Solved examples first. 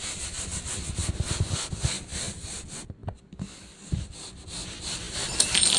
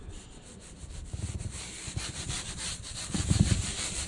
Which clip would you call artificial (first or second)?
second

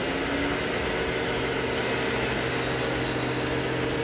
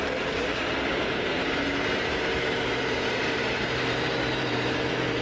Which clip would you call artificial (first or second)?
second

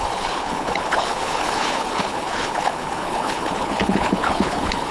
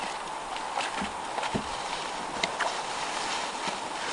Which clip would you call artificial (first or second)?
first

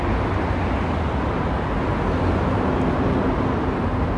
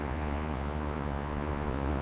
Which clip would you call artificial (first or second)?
second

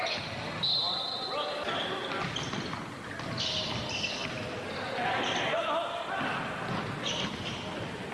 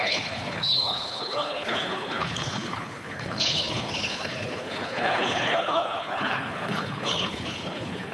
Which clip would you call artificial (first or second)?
second